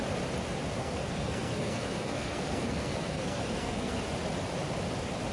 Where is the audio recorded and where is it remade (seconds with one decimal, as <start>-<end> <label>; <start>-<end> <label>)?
0.0-0.8 recorded; 0.8-4.0 remade; 4.0-5.3 recorded